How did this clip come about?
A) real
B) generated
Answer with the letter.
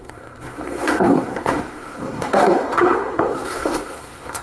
B